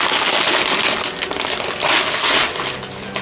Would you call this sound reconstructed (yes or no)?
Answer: no